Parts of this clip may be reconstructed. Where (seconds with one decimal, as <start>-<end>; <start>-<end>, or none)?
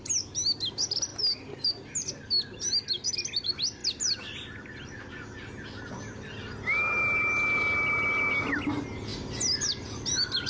none